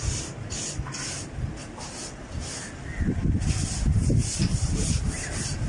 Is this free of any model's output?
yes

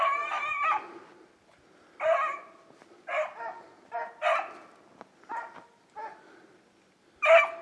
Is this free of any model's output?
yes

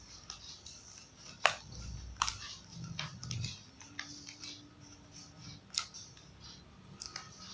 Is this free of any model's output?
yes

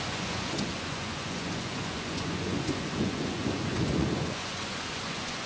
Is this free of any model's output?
no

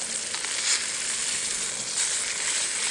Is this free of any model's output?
yes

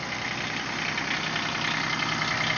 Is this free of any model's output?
yes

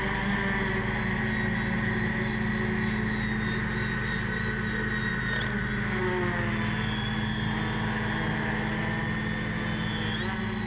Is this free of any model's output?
yes